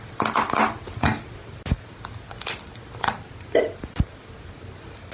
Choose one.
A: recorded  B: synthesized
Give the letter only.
A